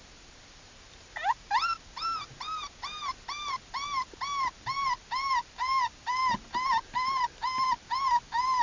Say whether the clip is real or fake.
real